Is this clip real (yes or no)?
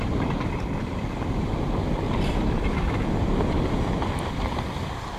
yes